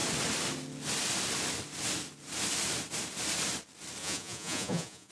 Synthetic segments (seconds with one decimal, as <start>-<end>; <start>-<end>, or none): 4.0-5.1